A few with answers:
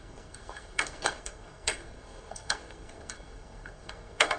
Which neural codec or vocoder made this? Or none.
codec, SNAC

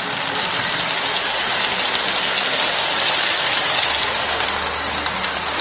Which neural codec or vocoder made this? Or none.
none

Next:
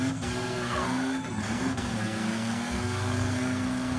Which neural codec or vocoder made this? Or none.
codec, SNAC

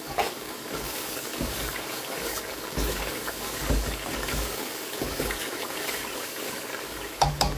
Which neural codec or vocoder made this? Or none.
codec, DAC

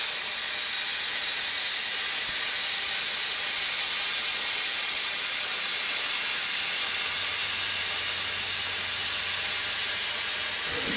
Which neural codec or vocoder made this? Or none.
none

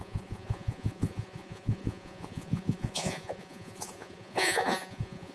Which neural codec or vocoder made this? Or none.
vocoder, Vocos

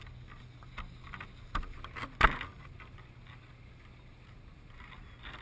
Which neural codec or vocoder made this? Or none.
none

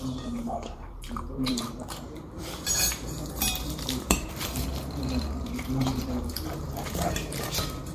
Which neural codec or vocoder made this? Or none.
vocoder, BigVGAN v2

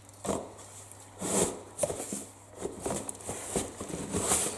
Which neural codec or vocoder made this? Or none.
none